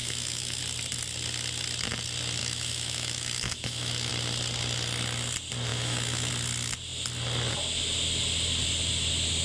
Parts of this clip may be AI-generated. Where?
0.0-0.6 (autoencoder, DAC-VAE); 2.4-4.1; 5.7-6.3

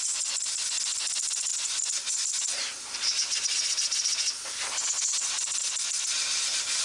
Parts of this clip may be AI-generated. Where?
none

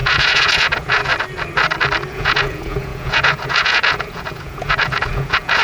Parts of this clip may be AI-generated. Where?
0.0-1.1 (vocoder, Vocos); 2.1-5.6

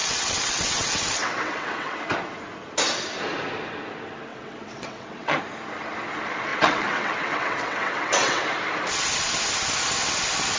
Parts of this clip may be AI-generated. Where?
0.0-2.0 (vocoder, WaveNeXt); 4.3-5.4; 6.5-8.4